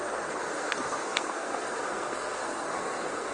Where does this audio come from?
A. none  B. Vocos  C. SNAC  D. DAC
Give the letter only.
C